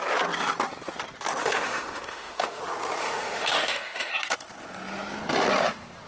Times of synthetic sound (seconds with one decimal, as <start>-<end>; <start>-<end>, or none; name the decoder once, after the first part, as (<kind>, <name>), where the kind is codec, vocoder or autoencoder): 1.4-2.6 (autoencoder, DAC-VAE); 3.0-4.1